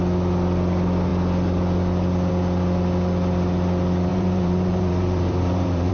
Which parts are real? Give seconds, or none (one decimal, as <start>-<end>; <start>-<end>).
0.0-4.1